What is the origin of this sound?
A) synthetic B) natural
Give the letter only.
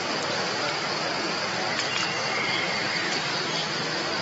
B